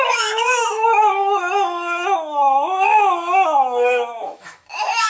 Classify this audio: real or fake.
fake